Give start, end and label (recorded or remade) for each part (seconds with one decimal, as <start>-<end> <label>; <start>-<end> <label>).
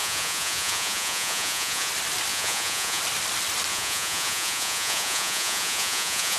0.0-1.9 remade; 1.9-2.3 recorded; 2.3-3.0 remade; 3.0-3.7 recorded; 3.7-6.4 remade